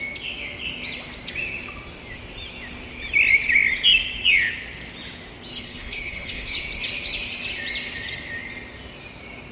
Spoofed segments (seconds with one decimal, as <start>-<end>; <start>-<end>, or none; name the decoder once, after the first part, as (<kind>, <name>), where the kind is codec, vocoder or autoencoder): 5.5-6.6 (codec, HILCodec)